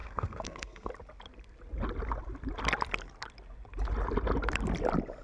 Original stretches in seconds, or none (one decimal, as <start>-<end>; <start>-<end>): 0.9-5.2